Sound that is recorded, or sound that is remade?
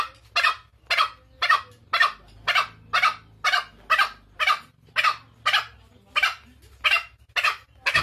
recorded